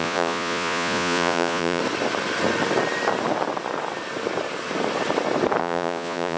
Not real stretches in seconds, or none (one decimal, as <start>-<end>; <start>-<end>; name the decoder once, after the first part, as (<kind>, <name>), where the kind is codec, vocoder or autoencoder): 0.0-1.8 (vocoder, Vocos); 5.6-6.4